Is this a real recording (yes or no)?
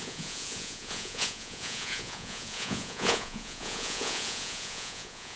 no